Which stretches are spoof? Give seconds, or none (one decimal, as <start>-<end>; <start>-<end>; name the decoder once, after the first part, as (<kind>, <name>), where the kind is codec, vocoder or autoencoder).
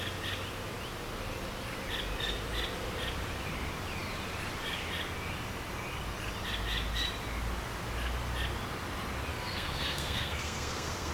9.3-11.1 (codec, SNAC)